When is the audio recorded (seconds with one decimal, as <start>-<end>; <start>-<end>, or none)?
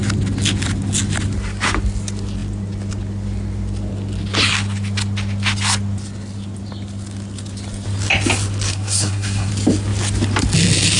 0.0-8.7; 9.5-11.0